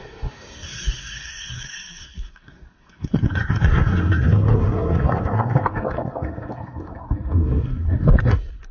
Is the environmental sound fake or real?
fake